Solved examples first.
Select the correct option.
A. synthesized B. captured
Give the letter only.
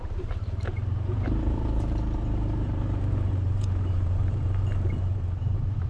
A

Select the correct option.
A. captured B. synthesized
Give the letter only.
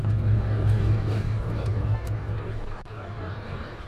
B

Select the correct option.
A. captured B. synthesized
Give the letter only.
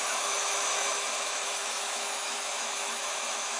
B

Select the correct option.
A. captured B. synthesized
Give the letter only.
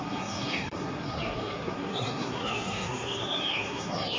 B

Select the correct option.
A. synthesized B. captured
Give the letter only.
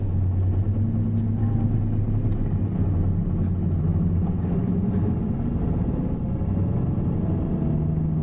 B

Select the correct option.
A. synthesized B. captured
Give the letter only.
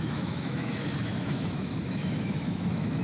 A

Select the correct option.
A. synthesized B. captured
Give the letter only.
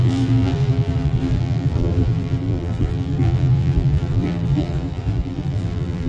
A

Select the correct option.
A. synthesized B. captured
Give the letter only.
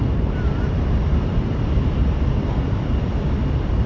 B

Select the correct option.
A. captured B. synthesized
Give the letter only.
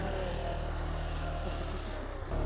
A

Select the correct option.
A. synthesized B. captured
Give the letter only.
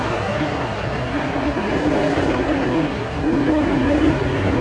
A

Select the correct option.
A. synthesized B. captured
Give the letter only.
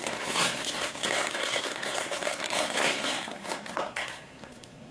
A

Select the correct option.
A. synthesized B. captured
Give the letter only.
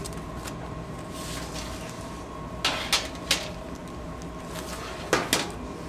B